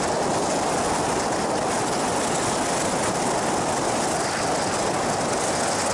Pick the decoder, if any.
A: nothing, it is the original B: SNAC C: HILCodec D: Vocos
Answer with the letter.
A